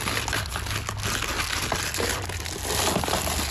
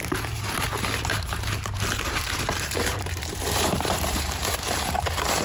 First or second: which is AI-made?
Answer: second